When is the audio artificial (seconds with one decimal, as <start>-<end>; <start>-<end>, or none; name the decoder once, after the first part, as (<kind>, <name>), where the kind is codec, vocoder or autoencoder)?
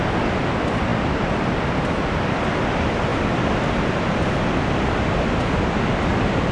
none